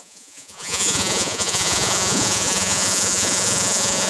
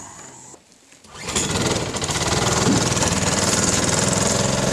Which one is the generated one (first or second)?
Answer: first